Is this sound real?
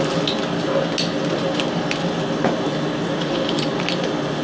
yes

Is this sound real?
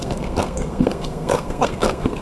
no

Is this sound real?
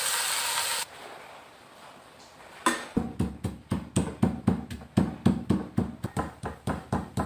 yes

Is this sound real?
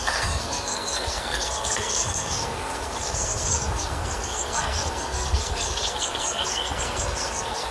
no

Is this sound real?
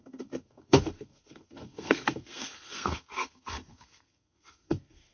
no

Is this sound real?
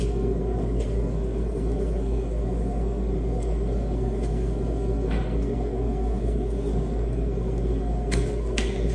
no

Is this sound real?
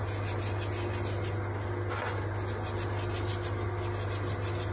yes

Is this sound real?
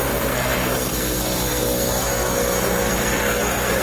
no